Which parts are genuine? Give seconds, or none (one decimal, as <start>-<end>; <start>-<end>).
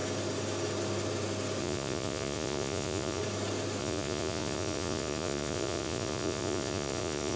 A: 0.0-1.6; 3.2-3.8